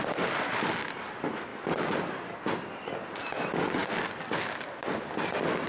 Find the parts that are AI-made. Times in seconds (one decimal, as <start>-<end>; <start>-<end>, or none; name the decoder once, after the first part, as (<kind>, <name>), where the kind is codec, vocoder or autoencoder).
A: none